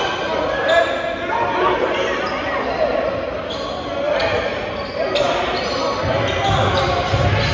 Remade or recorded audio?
recorded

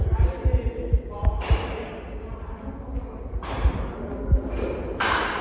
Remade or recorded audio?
recorded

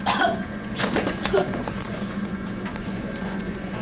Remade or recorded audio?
remade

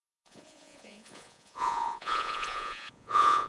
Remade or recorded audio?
remade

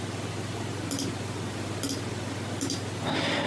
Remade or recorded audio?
recorded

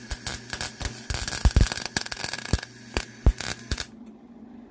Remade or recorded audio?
recorded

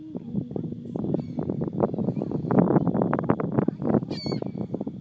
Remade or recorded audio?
recorded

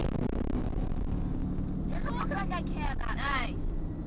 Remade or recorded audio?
recorded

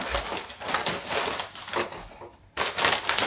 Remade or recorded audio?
recorded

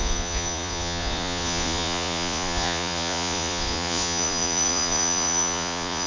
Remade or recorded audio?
remade